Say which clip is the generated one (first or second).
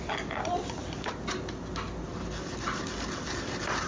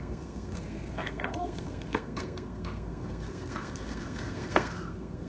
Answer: second